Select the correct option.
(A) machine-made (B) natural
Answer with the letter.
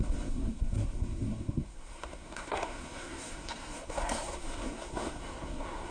A